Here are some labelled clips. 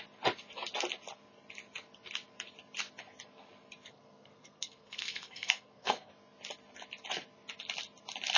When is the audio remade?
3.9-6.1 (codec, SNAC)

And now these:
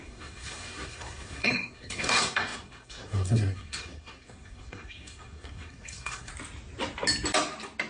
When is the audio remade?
0.0-6.3 (codec, SNAC)

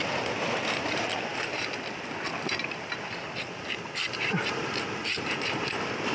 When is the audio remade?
none